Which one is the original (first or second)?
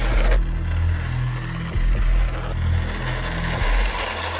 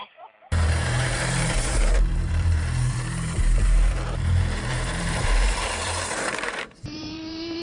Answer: first